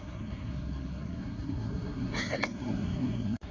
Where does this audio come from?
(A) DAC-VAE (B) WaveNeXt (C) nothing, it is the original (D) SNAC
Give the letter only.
D